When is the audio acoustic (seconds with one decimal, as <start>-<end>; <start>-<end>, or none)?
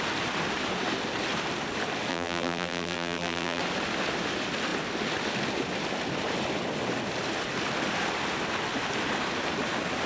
0.0-2.1; 3.6-10.1